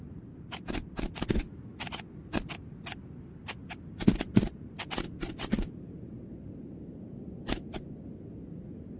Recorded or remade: recorded